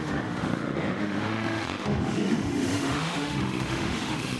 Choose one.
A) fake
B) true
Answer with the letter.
A